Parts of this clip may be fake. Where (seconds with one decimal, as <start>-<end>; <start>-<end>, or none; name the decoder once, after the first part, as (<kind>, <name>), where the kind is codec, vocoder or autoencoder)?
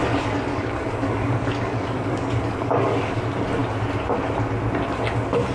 0.5-3.2 (codec, DAC)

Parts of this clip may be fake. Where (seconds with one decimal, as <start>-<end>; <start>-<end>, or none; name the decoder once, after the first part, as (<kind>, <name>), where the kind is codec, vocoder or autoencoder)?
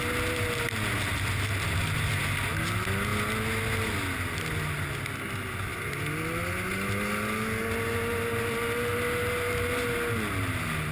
none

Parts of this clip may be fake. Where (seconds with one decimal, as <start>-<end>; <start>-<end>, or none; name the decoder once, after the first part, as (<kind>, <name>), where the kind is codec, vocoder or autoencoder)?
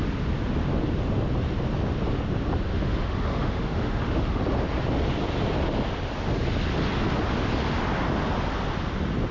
2.7-4.4 (autoencoder, DAC-VAE)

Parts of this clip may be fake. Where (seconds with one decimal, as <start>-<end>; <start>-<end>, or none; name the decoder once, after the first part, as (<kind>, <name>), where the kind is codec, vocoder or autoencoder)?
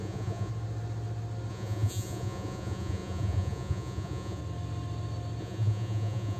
0.0-0.5 (vocoder, Vocos); 1.5-4.4; 5.4-6.4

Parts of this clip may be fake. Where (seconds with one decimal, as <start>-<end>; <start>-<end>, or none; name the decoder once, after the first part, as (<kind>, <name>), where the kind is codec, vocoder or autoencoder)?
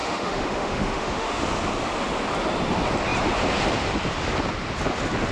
0.0-1.4 (autoencoder, DAC-VAE)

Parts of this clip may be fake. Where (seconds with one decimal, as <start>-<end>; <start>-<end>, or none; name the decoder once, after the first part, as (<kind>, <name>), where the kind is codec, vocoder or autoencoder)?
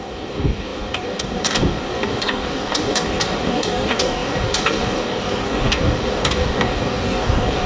0.0-7.7 (codec, DAC)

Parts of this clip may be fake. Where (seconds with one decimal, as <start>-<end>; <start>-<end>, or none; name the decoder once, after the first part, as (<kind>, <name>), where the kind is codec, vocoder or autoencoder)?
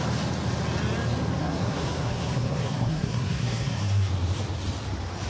1.4-4.1 (codec, SNAC)